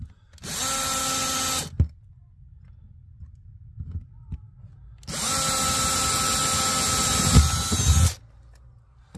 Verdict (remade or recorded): recorded